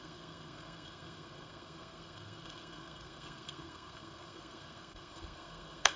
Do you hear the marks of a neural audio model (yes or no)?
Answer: yes